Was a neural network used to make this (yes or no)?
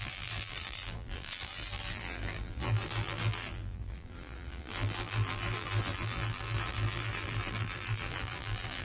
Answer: yes